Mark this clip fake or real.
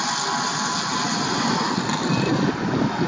real